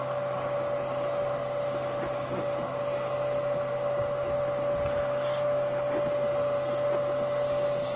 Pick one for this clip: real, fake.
real